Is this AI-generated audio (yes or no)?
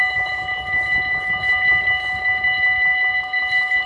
no